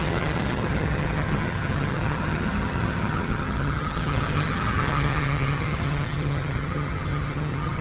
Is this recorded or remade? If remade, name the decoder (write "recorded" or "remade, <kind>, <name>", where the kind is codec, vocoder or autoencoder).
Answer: remade, vocoder, HiFi-GAN